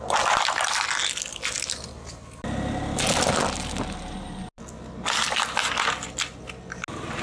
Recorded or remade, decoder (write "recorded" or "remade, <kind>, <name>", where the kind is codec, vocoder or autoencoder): recorded